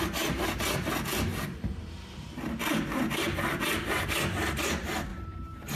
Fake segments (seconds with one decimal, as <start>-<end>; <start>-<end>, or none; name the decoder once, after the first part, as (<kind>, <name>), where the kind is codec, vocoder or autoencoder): 1.3-2.5 (vocoder, BigVGAN v2); 5.1-5.8